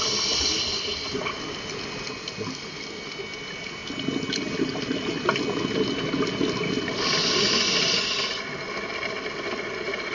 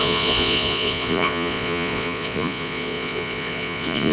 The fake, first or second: second